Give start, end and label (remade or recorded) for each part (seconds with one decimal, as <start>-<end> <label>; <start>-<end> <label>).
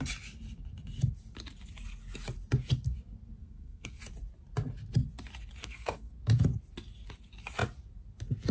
0.0-3.4 recorded; 3.4-4.0 remade; 4.0-5.6 recorded; 5.6-6.1 remade; 6.1-8.5 recorded